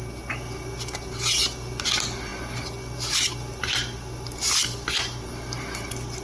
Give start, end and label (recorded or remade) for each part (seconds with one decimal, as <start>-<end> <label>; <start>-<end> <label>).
0.0-6.2 recorded